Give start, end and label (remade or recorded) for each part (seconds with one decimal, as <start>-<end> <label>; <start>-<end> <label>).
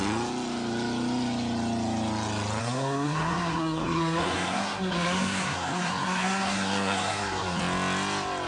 0.0-2.6 recorded; 2.6-7.6 remade; 7.6-8.5 recorded